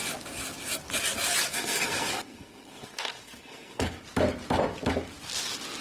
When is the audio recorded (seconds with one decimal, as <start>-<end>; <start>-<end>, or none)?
0.0-1.5; 4.0-5.8